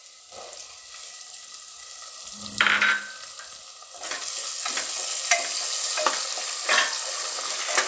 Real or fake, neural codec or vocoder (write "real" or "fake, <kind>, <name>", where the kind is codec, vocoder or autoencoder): real